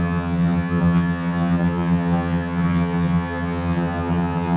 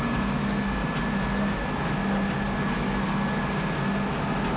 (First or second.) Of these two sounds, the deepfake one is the first